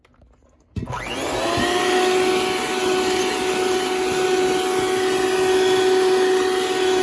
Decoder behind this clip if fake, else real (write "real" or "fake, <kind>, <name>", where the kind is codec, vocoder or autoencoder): real